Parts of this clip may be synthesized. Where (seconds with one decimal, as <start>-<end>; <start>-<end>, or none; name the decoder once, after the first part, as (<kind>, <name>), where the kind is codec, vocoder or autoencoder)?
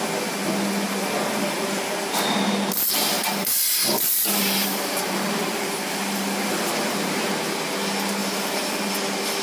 3.7-7.3 (vocoder, BigVGAN v2); 8.2-8.9